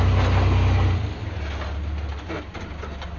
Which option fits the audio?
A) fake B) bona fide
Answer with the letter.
B